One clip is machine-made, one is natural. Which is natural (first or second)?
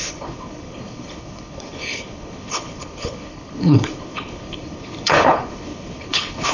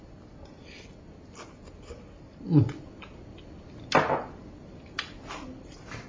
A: second